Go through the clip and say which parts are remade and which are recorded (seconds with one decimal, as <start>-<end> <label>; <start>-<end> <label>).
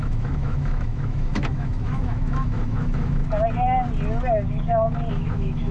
0.0-3.2 remade; 3.2-5.1 recorded; 5.1-5.7 remade